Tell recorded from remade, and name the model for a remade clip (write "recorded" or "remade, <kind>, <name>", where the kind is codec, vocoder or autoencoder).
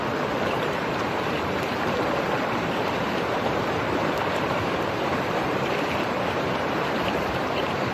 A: remade, vocoder, BigVGAN v2